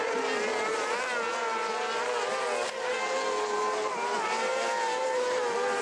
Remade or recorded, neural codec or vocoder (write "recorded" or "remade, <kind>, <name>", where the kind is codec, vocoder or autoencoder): recorded